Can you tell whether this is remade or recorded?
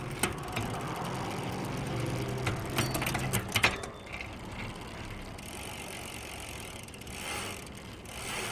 recorded